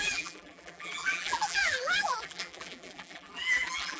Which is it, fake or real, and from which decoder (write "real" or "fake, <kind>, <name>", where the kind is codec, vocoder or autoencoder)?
fake, vocoder, BigVGAN v2